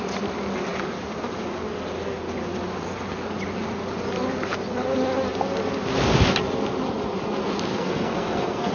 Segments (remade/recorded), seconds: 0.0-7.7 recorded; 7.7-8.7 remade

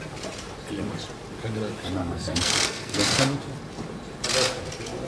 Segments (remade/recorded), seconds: 0.0-2.0 recorded; 2.0-3.3 remade; 3.3-5.1 recorded

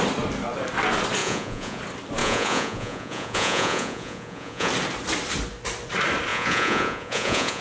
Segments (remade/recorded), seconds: 0.0-1.2 recorded; 1.2-1.8 remade; 1.8-2.2 recorded; 2.2-4.7 remade; 4.7-6.3 recorded; 6.3-7.6 remade

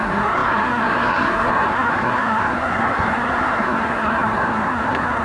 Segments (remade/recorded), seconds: 0.0-5.2 remade

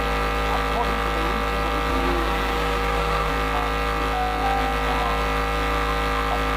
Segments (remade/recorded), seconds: 0.0-1.9 recorded; 1.9-3.3 remade; 3.3-6.6 recorded

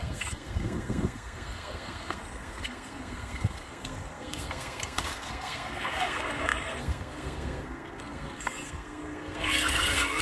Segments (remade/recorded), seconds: 0.0-10.2 remade

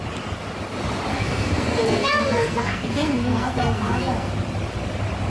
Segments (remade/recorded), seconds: 0.0-1.1 recorded; 1.1-4.3 remade; 4.3-5.3 recorded